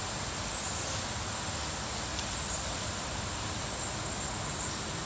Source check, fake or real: real